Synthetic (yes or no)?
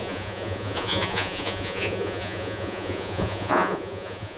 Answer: yes